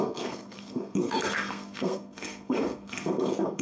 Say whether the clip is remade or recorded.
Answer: remade